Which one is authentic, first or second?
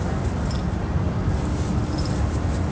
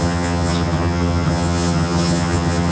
first